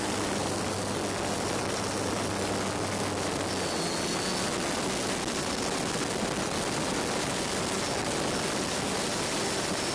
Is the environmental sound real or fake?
real